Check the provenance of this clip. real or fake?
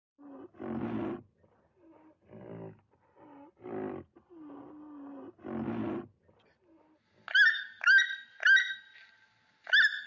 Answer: real